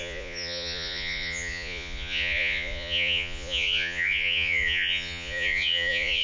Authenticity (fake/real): fake